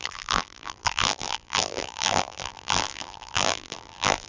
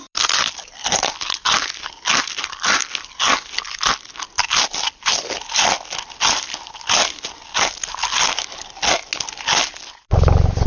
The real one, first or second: second